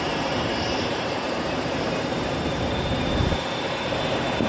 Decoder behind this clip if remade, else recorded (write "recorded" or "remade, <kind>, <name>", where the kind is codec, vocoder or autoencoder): remade, vocoder, BigVGAN v2